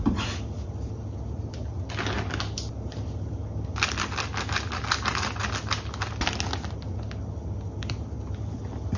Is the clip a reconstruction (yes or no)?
no